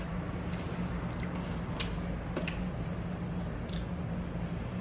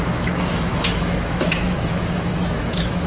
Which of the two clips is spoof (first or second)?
second